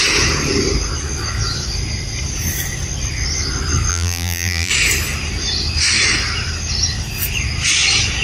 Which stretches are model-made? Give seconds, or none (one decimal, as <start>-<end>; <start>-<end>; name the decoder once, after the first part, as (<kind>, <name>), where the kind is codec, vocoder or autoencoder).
3.9-4.7 (vocoder, BigVGAN v2)